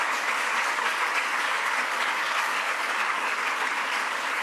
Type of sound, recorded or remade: remade